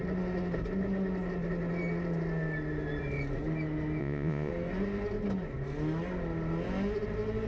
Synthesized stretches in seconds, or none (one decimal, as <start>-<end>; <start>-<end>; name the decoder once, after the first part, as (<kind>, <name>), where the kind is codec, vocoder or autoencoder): 4.0-4.5 (vocoder, Vocos)